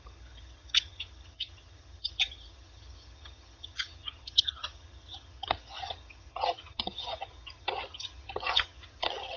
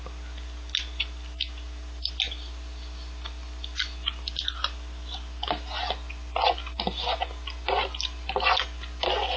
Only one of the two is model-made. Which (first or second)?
first